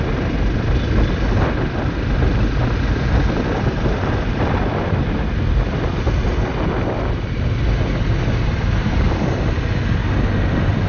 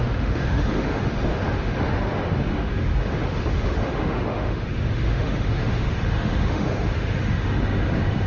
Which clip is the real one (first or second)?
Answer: first